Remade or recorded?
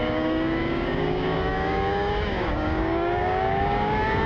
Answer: remade